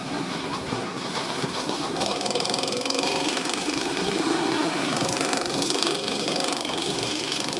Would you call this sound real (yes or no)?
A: no